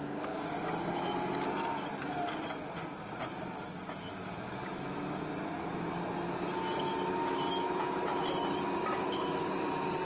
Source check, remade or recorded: recorded